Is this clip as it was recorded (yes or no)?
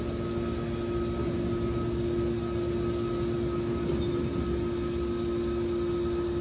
yes